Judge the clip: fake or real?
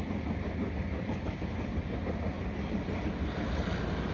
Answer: real